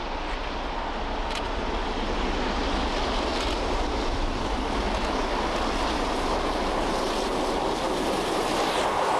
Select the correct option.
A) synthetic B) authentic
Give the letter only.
B